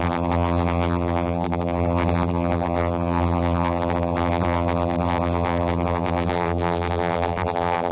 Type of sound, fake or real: fake